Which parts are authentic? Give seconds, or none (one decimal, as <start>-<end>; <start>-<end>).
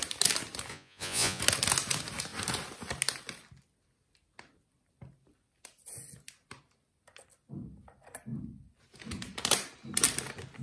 0.0-0.7; 1.4-10.6